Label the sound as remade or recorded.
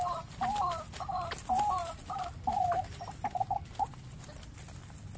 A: recorded